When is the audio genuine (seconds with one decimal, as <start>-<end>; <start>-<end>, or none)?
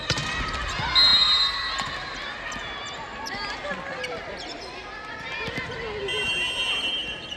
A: 0.0-3.1; 4.6-7.4